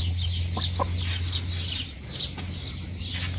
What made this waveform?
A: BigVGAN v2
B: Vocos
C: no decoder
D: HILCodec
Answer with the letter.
C